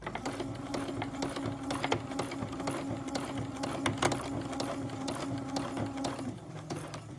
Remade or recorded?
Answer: recorded